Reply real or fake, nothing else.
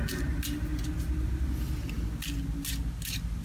real